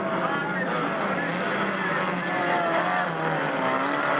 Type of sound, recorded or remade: recorded